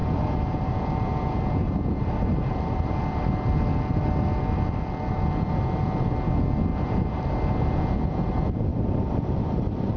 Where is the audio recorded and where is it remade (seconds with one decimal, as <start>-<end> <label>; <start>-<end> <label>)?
0.0-2.9 remade; 2.9-6.7 recorded; 6.7-7.4 remade; 7.4-8.7 recorded; 8.7-10.0 remade